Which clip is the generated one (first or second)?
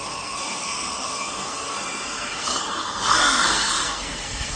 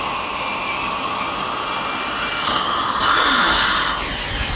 first